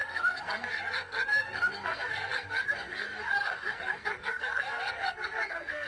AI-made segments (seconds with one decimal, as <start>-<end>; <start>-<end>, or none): 0.0-5.9